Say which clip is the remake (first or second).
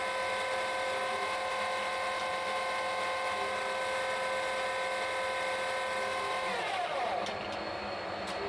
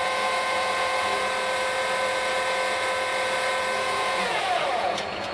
second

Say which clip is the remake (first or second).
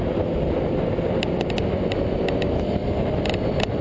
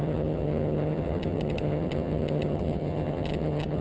second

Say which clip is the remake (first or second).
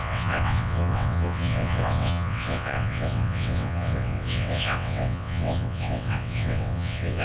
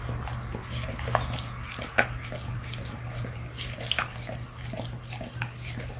first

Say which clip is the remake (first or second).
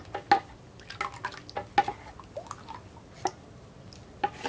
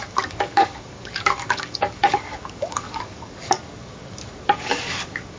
second